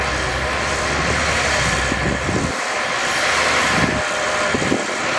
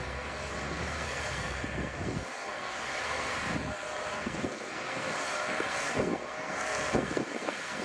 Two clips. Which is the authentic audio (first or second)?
first